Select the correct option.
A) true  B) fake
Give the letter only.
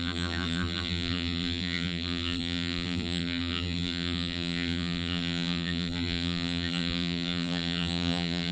B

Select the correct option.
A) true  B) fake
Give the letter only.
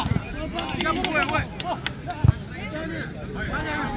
A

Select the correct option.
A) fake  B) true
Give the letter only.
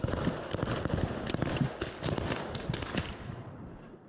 A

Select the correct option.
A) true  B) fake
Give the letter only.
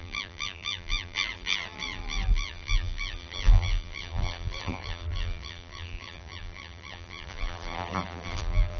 B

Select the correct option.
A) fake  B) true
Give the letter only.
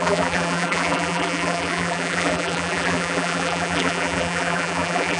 A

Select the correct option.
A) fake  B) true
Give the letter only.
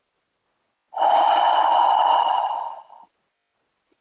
B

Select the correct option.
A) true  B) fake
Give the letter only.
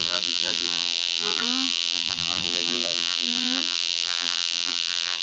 B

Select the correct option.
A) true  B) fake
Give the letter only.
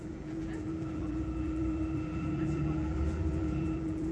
B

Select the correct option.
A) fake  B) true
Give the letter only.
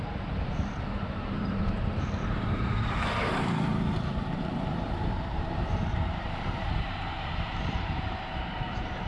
A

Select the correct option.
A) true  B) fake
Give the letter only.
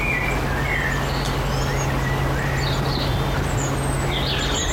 A